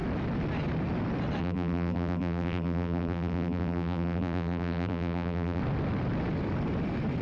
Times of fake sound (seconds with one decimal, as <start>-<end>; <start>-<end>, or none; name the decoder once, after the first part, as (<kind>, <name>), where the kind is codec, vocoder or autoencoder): 1.4-5.6 (vocoder, BigVGAN v2)